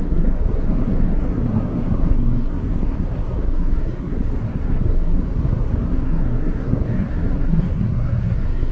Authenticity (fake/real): fake